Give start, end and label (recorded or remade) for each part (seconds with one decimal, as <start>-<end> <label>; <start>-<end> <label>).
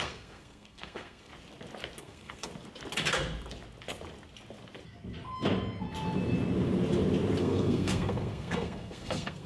0.0-1.3 remade; 1.3-2.0 recorded; 2.0-2.5 remade; 2.5-7.4 recorded; 7.4-9.5 remade